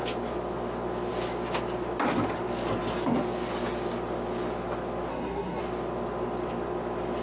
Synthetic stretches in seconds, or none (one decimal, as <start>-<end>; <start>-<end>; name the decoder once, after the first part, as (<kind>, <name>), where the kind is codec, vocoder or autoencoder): 5.1-5.6 (codec, SNAC)